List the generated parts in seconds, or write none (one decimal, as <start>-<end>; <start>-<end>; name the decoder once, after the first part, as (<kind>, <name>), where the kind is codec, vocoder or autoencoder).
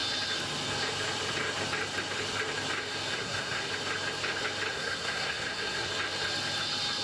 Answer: 3.1-3.7 (codec, SNAC); 4.7-5.9